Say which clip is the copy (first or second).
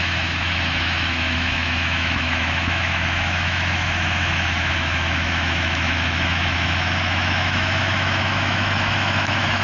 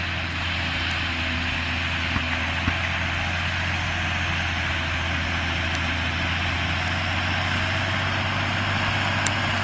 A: first